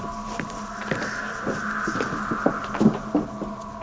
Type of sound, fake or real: real